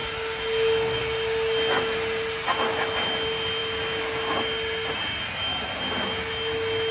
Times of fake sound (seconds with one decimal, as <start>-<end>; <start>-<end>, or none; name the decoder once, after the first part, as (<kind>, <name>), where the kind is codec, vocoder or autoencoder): none